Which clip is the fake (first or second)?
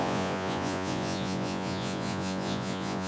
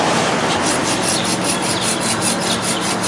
first